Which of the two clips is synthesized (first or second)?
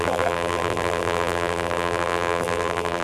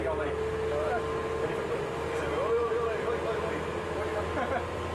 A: first